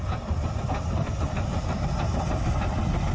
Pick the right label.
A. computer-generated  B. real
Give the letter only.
B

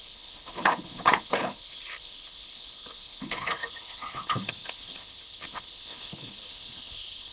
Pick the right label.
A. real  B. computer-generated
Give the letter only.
B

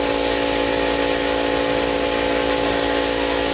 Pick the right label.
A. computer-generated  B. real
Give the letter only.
B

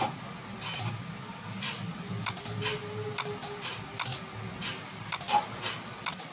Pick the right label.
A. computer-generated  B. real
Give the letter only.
B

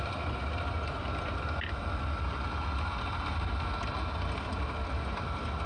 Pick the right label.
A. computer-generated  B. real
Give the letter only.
B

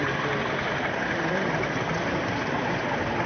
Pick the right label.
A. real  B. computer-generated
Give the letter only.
A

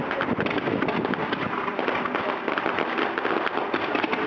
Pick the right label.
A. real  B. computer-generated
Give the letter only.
A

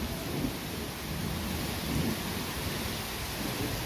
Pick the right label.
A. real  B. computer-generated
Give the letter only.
A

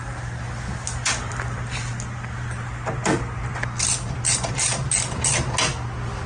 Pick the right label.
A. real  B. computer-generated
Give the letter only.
A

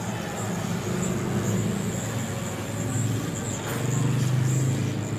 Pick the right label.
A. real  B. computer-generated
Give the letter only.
A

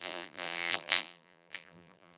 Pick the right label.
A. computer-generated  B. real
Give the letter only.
A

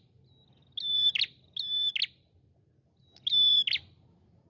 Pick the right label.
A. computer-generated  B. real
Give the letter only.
B